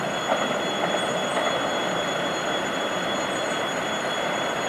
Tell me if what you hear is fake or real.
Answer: fake